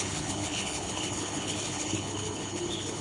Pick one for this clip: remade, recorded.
remade